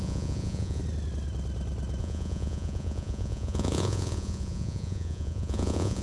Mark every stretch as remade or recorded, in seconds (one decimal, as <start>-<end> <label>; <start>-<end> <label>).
0.0-0.8 remade; 0.8-2.0 recorded; 2.0-6.0 remade